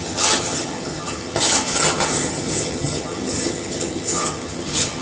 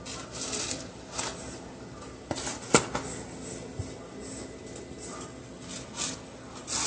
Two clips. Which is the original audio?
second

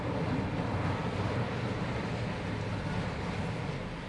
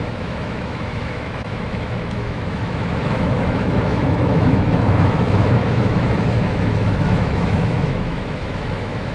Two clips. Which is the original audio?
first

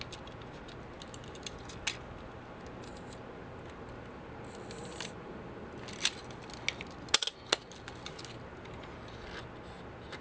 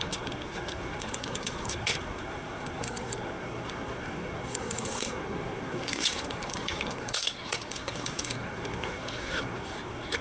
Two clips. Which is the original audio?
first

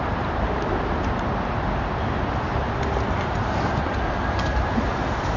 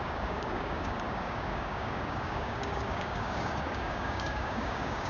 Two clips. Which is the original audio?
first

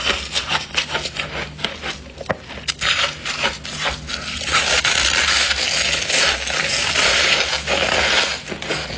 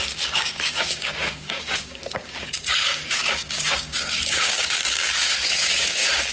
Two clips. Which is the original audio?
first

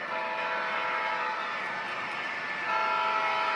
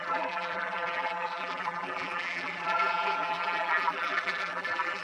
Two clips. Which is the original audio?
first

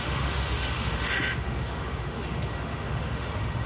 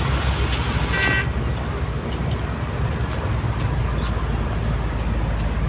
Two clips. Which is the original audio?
second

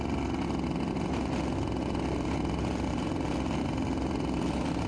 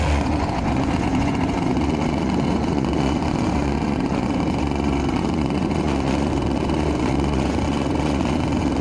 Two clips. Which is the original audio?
first